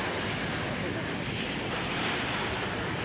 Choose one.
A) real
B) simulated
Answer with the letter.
A